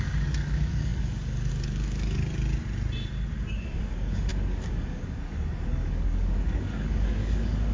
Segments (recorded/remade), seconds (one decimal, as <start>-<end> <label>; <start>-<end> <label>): 0.0-2.2 remade; 2.2-3.5 recorded; 3.5-7.7 remade